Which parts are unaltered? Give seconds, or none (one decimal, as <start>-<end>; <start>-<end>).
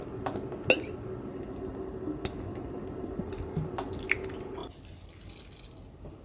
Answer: 0.0-6.2